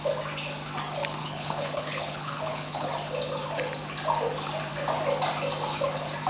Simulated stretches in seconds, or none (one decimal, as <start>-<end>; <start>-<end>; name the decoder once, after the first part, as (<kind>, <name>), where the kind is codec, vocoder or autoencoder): 1.2-2.9 (codec, HILCodec)